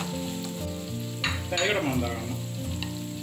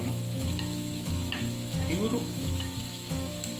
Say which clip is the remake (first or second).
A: second